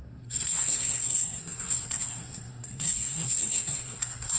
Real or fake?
fake